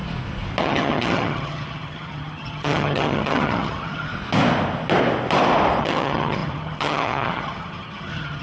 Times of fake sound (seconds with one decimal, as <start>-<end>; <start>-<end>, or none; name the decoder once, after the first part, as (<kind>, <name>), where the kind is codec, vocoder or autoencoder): 0.6-4.1 (vocoder, HiFi-GAN); 5.8-8.4